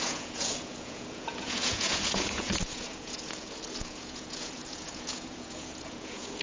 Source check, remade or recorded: remade